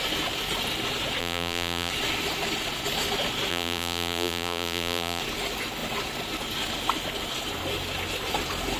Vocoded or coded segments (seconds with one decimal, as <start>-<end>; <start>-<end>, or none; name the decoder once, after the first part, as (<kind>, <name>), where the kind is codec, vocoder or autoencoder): 1.2-1.9 (vocoder, BigVGAN v2); 3.5-5.2

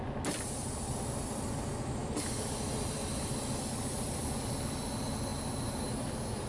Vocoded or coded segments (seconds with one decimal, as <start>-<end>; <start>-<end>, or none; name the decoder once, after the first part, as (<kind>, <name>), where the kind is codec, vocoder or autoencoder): none